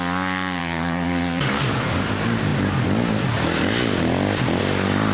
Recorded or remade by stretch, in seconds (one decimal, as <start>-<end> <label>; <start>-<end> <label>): 0.0-0.6 recorded; 0.6-2.1 remade; 2.1-5.1 recorded